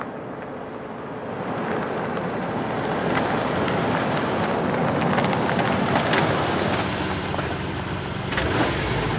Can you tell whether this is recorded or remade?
recorded